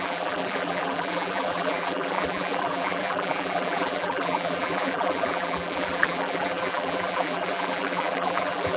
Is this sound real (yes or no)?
no